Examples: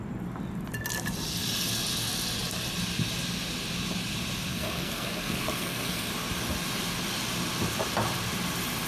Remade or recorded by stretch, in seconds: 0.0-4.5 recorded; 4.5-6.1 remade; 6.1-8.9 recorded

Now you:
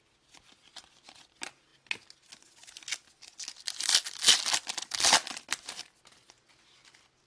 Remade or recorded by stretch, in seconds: 0.0-7.3 recorded

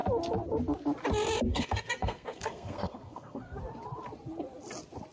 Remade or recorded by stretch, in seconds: 0.0-1.5 recorded; 1.5-3.6 remade; 3.6-5.1 recorded

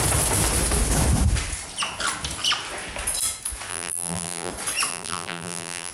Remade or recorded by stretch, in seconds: 0.0-3.7 recorded; 3.7-4.5 remade; 4.5-4.9 recorded; 4.9-5.9 remade

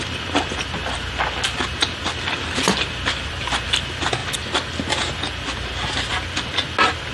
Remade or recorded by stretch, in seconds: 0.0-7.1 recorded

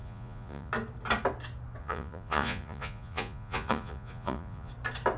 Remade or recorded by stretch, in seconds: 0.0-0.7 remade; 0.7-1.8 recorded; 1.8-4.7 remade; 4.7-5.2 recorded